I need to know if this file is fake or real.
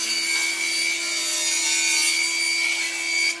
real